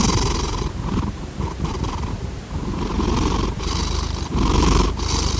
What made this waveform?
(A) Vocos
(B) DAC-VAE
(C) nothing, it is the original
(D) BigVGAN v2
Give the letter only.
D